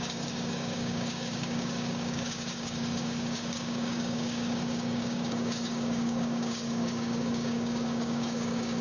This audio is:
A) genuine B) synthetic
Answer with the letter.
B